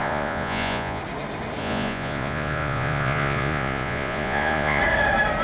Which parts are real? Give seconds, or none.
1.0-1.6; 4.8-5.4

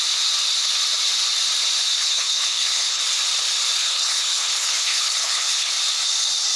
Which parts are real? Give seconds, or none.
0.0-2.0; 3.0-3.8; 5.7-6.6

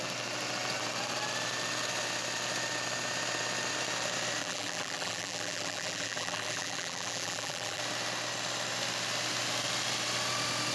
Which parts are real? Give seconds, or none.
0.0-4.4; 7.8-10.7

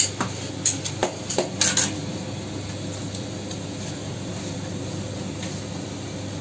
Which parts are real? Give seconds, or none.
0.0-6.4

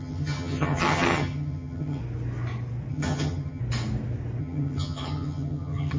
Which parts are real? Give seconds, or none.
2.0-2.9; 3.6-4.4